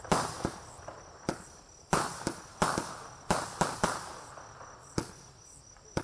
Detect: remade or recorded recorded